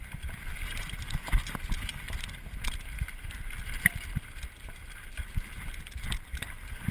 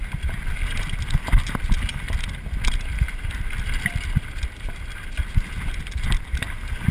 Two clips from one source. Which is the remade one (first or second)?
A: first